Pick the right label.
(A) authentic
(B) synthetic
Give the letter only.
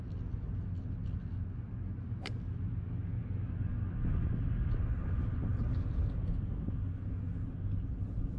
A